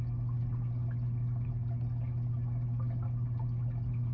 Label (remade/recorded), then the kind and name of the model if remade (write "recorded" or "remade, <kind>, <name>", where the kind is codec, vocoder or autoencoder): recorded